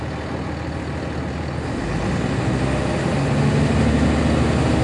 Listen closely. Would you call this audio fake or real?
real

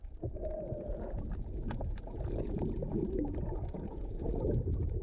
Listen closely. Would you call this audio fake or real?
fake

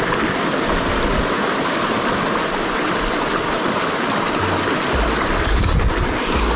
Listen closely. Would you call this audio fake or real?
real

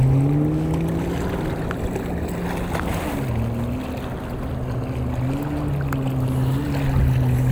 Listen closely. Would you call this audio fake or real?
real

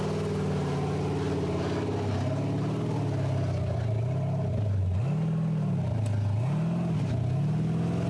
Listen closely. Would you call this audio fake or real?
real